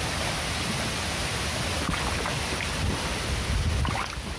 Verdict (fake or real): real